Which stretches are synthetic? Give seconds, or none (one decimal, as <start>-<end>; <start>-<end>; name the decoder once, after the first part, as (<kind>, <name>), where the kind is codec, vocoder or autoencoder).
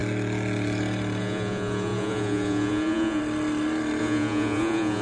1.2-3.2 (vocoder, Vocos); 4.0-5.0